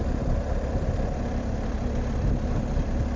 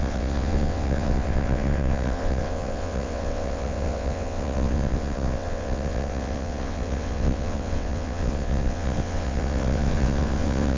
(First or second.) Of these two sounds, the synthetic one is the second